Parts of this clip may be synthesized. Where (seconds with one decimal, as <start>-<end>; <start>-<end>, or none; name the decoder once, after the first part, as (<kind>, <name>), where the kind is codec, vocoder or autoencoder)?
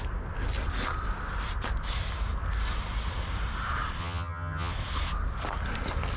4.0-4.7 (vocoder, HiFi-GAN)